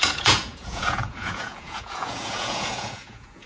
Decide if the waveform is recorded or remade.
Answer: remade